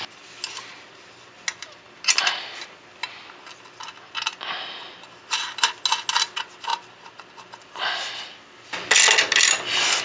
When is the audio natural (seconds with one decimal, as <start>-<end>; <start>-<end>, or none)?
0.0-10.0